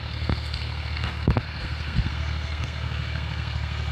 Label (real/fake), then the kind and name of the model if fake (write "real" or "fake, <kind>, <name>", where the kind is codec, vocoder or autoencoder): fake, codec, SNAC